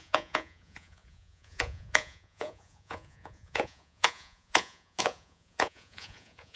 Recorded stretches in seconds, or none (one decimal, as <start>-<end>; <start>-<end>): none